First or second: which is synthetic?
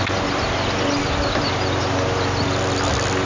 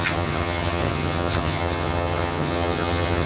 second